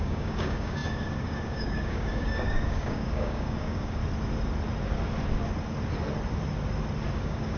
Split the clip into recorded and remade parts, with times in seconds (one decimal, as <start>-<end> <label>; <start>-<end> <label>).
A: 0.0-4.0 remade; 4.0-7.1 recorded; 7.1-7.6 remade